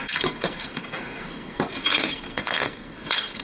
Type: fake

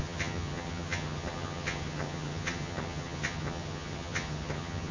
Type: fake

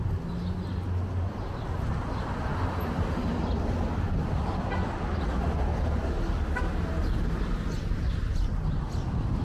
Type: real